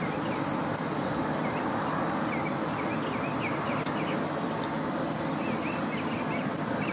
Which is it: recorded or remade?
recorded